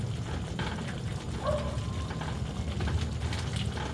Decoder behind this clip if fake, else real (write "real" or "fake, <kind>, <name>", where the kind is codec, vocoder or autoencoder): real